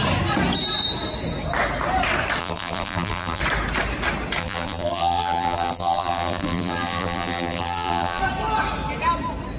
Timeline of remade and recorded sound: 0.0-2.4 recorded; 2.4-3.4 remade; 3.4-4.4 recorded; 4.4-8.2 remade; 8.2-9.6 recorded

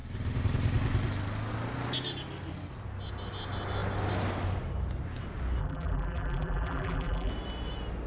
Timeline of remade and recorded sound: 0.0-5.6 recorded; 5.6-7.3 remade; 7.3-8.1 recorded

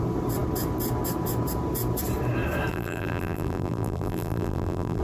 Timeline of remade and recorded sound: 0.0-2.7 recorded; 2.7-5.0 remade

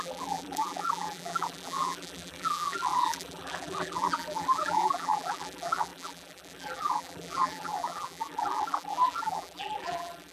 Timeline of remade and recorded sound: 0.0-10.3 remade

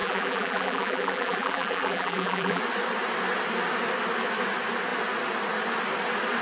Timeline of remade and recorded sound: 0.0-2.6 remade; 2.6-6.4 recorded

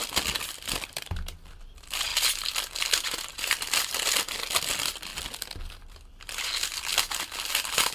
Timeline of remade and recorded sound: 0.0-2.1 remade; 2.1-3.3 recorded; 3.3-5.1 remade; 5.1-5.7 recorded; 5.7-7.9 remade